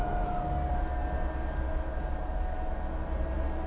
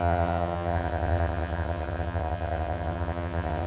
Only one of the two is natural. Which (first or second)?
first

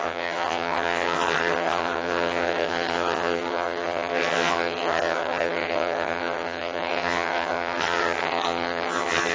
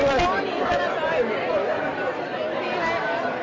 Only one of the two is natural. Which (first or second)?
second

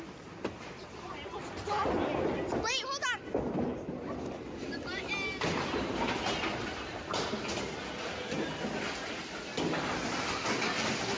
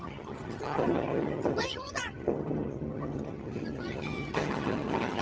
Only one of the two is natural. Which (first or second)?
first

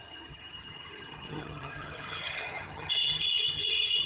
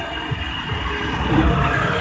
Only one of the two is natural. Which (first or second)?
second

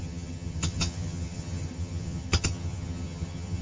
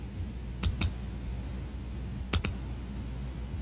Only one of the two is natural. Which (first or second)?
second